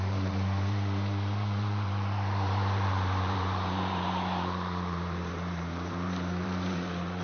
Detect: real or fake fake